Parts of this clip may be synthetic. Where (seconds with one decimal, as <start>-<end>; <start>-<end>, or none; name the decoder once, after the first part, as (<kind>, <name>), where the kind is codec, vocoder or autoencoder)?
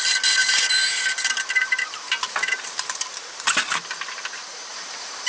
0.4-3.3 (vocoder, BigVGAN v2); 4.7-5.3